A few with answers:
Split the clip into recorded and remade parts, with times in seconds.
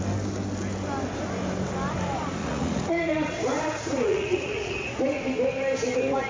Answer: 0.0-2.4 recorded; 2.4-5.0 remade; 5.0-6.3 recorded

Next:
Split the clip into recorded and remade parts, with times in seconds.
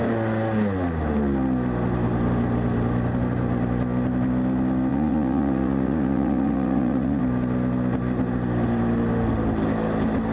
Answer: 0.0-4.9 recorded; 4.9-7.2 remade; 7.2-10.3 recorded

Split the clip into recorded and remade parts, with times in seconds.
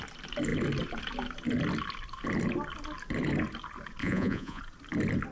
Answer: 0.0-4.0 recorded; 4.0-4.6 remade; 4.6-5.3 recorded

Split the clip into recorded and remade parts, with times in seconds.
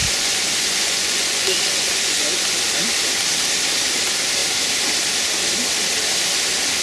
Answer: 0.0-2.6 remade; 2.6-6.8 recorded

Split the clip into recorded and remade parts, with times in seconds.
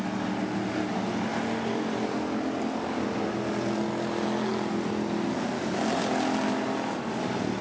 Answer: 0.0-7.6 recorded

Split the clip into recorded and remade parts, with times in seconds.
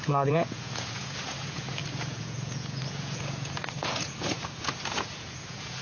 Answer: 0.0-5.8 remade